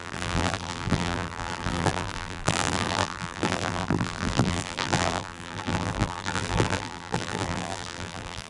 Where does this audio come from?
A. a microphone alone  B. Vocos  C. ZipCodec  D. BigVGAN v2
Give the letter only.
D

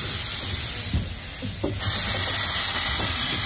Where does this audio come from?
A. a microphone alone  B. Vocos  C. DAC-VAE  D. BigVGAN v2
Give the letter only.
A